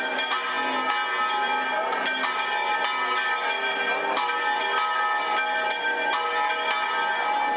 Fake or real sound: real